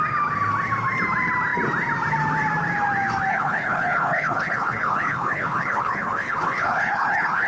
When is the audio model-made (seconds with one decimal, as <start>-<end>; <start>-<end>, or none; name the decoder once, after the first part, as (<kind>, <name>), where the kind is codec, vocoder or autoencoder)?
3.3-7.5 (codec, HILCodec)